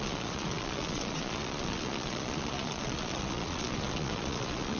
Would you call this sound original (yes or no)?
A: no